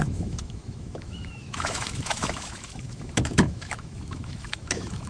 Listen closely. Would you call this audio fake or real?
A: fake